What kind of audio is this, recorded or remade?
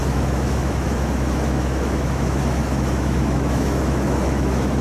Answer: remade